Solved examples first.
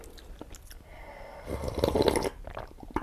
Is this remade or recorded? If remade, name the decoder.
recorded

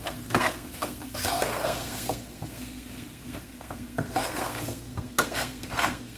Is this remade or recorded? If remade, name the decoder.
remade, codec, SNAC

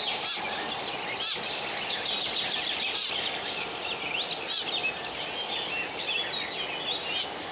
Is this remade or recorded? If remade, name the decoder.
recorded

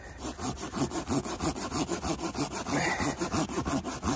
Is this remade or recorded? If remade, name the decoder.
recorded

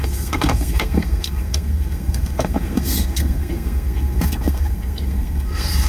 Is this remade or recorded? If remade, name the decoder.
remade, codec, SNAC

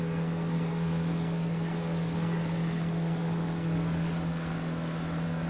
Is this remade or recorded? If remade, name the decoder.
remade, codec, SNAC